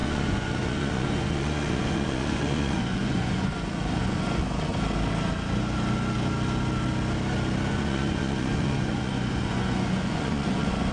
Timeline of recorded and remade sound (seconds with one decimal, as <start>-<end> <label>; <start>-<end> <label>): 0.0-4.7 remade; 4.7-7.7 recorded; 7.7-10.9 remade